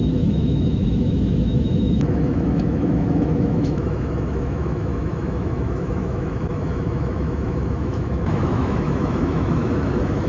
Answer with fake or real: fake